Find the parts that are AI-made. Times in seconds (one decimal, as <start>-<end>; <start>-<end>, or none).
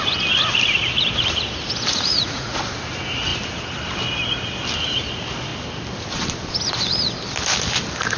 1.9-2.6